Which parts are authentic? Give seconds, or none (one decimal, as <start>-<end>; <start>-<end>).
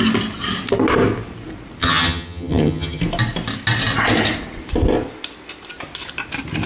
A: 0.0-1.8; 3.0-6.7